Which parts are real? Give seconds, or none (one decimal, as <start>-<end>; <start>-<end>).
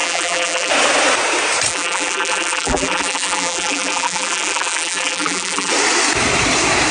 0.7-1.7; 5.7-6.9